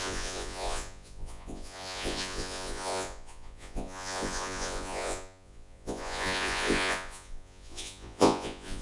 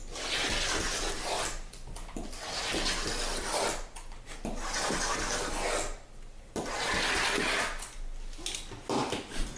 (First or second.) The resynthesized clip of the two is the first